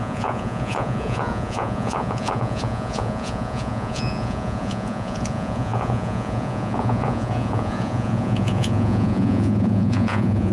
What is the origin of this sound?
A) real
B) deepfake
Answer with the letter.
B